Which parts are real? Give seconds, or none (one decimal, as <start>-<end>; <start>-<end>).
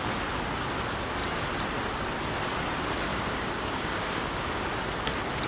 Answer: 0.0-3.1; 4.6-5.5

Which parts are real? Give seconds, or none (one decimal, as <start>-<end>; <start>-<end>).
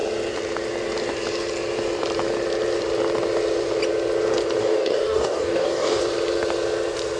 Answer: 0.0-4.6; 6.0-7.2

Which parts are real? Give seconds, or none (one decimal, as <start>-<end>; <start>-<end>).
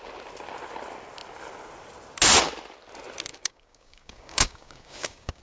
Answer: 0.0-3.3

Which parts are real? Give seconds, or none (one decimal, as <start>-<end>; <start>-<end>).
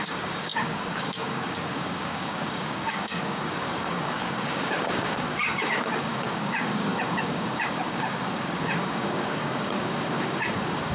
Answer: none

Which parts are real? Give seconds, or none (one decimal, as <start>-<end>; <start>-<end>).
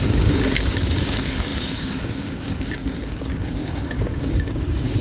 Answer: none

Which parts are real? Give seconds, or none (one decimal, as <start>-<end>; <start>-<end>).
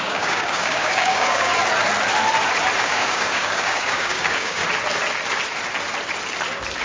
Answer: 1.6-2.8; 4.6-6.8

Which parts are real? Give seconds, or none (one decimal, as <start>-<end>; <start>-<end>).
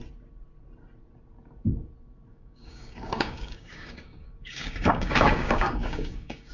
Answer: 0.0-2.3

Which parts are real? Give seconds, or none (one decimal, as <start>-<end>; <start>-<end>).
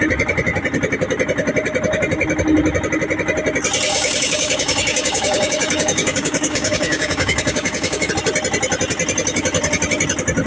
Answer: 0.0-3.9; 8.1-10.5